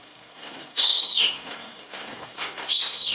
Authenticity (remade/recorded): remade